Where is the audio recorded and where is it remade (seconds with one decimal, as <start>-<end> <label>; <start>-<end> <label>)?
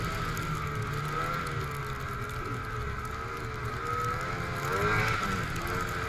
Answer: 0.0-6.1 recorded